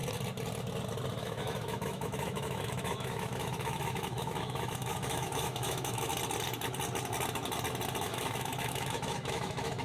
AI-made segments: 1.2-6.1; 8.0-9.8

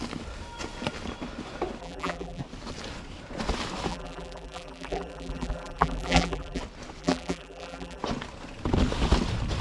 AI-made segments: 1.8-2.4; 3.9-6.6; 7.0-8.0

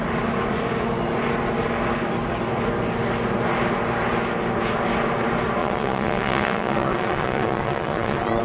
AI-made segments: 5.6-8.4